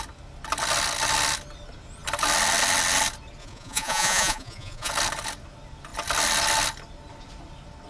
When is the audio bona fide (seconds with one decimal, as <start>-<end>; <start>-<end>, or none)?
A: 0.0-3.4; 4.9-7.9